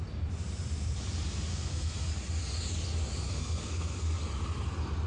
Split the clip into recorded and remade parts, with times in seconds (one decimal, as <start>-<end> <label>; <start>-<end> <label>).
0.0-1.5 recorded; 1.5-2.1 remade; 2.1-3.4 recorded; 3.4-4.2 remade; 4.2-5.1 recorded

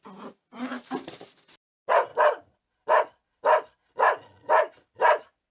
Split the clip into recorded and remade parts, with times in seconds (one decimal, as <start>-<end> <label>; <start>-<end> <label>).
0.0-5.5 recorded

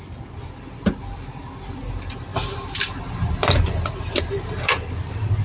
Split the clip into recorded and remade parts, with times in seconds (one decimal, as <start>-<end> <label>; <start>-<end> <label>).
0.0-5.4 recorded

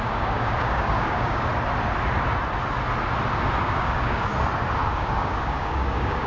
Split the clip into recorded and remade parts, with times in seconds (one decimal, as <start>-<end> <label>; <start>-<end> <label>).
0.0-1.5 remade; 1.5-3.6 recorded; 3.6-4.3 remade; 4.3-4.9 recorded; 4.9-6.3 remade

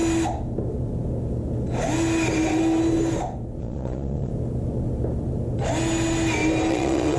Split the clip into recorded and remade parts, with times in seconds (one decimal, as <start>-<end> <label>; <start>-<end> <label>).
0.0-3.6 recorded; 3.6-4.3 remade; 4.3-6.7 recorded; 6.7-7.2 remade